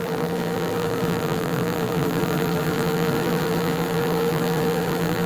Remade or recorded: remade